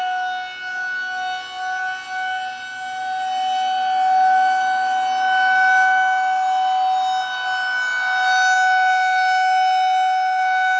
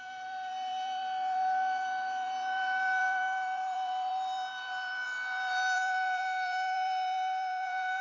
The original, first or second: first